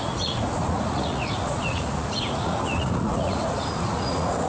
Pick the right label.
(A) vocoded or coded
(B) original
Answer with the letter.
A